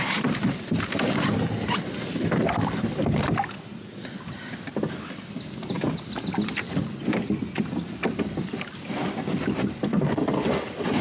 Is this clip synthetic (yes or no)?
no